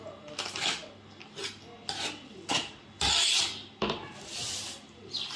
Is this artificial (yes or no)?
no